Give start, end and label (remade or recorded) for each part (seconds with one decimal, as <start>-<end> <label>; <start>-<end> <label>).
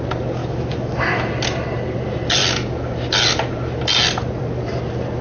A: 0.0-0.4 recorded; 0.4-1.3 remade; 1.3-5.2 recorded